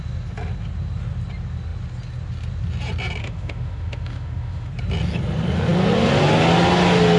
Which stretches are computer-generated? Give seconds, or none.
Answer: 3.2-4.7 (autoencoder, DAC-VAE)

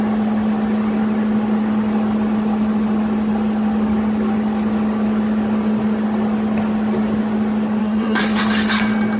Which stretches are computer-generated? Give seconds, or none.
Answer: 7.8-8.4 (codec, SNAC)

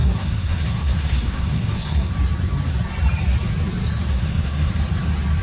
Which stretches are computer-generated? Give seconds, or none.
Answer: 0.0-2.1 (codec, SNAC); 4.1-4.7

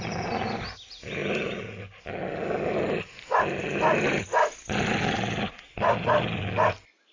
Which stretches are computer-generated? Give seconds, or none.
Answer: none

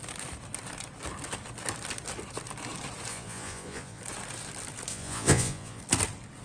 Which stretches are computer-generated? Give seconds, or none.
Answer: 3.1-4.0 (vocoder, Vocos); 4.9-5.8